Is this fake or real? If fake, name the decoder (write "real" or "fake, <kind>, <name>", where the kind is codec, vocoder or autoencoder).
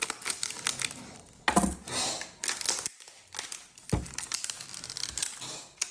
real